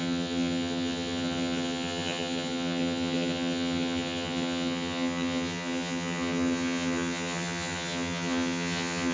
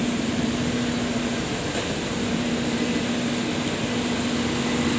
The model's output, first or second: first